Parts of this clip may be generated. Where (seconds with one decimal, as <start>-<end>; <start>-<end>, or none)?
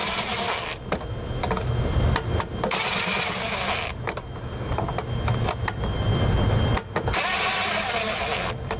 none